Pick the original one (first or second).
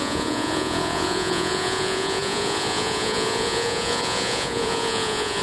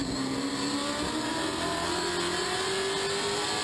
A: second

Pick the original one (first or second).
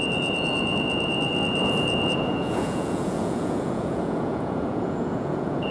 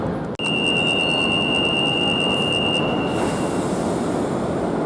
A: second